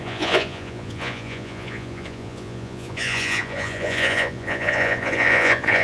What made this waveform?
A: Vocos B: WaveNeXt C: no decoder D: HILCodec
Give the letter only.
A